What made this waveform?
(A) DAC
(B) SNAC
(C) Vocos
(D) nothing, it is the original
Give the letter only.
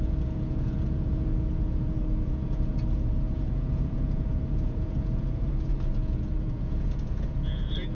C